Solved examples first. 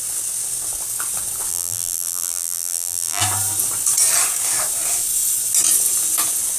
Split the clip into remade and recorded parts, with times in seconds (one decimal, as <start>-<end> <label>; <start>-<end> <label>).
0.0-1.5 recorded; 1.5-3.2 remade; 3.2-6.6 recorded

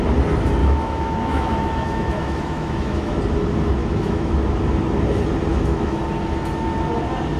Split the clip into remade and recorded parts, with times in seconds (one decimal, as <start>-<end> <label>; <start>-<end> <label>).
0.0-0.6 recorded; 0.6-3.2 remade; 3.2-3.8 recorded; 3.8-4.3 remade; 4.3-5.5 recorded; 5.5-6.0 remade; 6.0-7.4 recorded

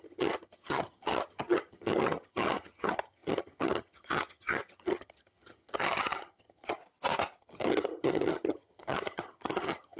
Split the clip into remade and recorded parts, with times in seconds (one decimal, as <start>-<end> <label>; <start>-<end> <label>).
0.0-6.8 remade; 6.8-7.4 recorded; 7.4-10.0 remade